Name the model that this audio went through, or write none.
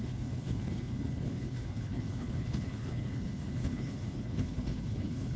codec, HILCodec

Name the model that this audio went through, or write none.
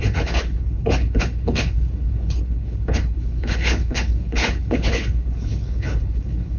codec, HILCodec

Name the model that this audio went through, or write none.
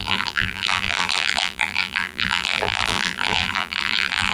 vocoder, BigVGAN v2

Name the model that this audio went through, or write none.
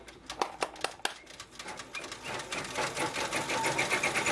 none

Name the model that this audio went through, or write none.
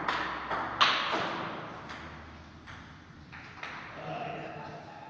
none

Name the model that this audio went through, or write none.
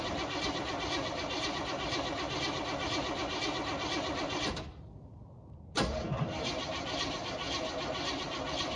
none